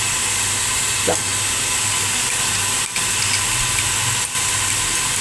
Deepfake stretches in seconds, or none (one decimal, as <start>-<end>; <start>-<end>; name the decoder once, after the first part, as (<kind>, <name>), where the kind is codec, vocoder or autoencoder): none